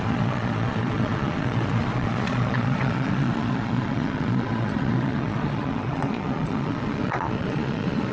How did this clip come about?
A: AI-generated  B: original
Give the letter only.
A